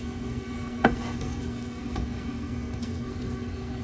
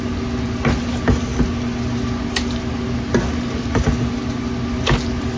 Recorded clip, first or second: second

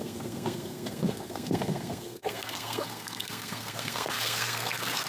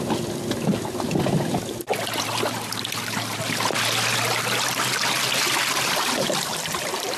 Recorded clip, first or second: second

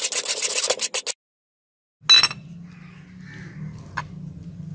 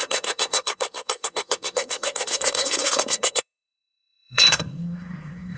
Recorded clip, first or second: first